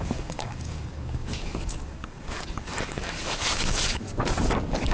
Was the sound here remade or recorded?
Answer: remade